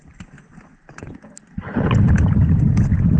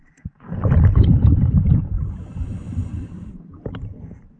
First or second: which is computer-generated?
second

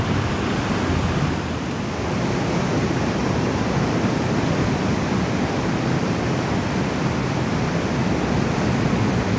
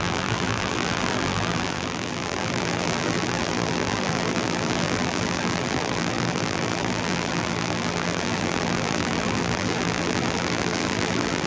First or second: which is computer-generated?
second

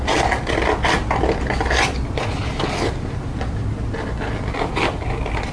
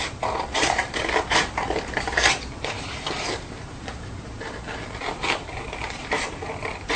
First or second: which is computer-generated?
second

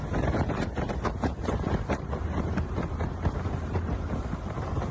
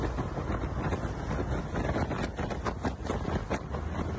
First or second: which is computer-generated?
first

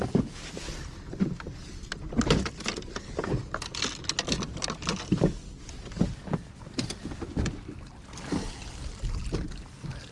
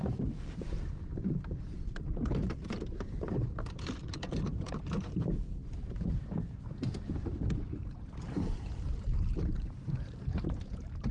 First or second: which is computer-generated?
second